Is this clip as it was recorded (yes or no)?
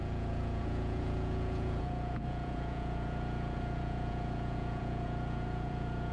no